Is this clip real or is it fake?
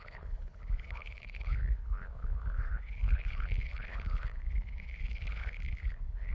fake